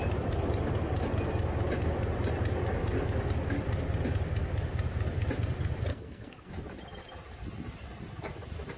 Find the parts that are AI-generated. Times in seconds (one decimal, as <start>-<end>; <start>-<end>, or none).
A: 5.9-6.5

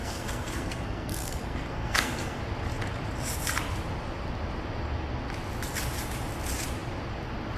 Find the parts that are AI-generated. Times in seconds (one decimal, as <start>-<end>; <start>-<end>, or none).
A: 0.0-2.4